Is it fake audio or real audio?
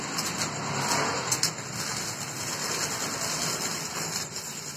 real